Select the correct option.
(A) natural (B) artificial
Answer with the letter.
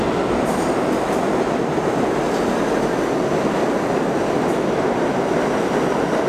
A